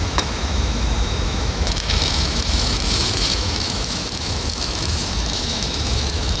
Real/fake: fake